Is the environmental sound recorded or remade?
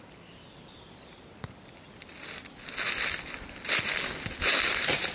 recorded